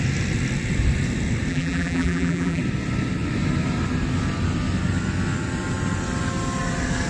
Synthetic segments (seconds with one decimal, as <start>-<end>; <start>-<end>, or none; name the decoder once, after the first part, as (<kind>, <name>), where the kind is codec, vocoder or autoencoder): 1.5-2.6 (vocoder, BigVGAN v2)